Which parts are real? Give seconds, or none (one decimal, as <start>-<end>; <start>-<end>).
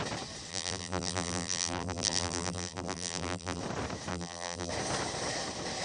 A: 0.0-0.5; 3.6-4.1; 4.7-5.8